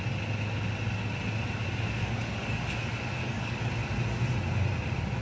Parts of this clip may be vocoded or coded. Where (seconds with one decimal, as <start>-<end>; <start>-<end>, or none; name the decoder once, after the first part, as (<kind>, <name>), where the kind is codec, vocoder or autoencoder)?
2.0-2.7 (codec, DAC); 3.2-3.7